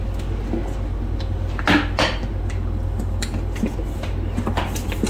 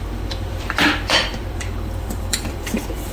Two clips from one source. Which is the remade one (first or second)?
second